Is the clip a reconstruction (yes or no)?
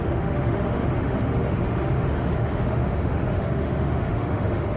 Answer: yes